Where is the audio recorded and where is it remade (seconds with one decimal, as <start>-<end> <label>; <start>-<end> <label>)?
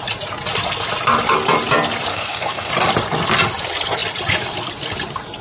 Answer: 0.0-2.1 recorded; 2.1-2.7 remade; 2.7-5.4 recorded